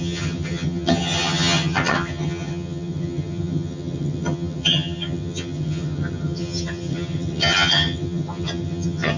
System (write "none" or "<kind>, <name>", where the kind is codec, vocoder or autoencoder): vocoder, HiFi-GAN